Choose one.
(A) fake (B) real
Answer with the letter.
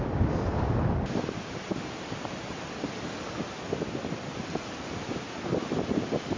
B